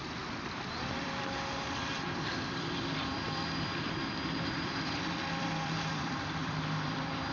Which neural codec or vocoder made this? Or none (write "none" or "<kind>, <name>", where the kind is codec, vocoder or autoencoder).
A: vocoder, BigVGAN v2